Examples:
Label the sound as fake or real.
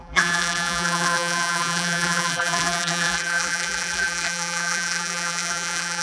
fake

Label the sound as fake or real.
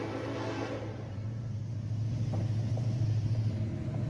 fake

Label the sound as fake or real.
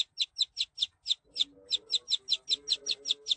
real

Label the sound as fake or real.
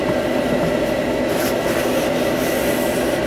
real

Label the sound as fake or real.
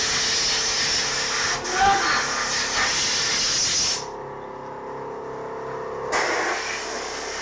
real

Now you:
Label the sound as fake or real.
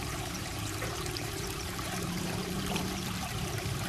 fake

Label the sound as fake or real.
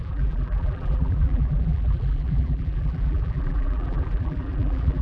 fake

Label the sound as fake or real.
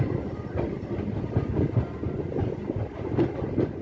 real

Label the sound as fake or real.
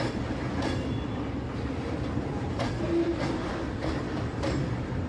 fake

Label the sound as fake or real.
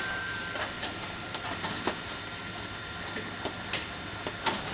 fake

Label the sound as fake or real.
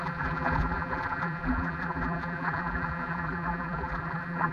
fake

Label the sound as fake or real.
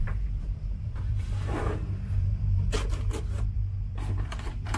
fake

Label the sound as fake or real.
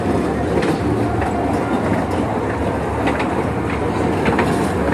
real